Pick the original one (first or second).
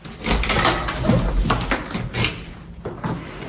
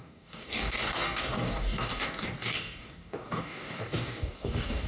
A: first